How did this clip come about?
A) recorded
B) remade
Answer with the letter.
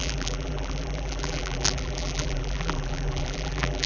B